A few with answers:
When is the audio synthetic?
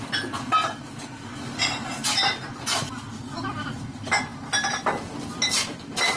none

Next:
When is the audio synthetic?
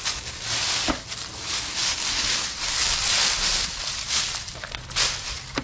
none